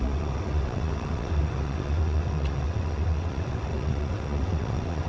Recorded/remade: remade